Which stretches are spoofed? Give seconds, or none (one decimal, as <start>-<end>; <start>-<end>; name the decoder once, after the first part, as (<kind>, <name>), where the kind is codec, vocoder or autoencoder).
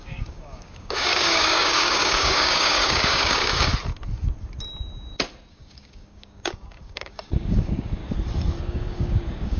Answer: 0.0-3.7 (codec, DAC); 5.5-8.0; 8.6-9.6